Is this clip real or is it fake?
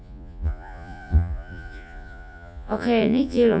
fake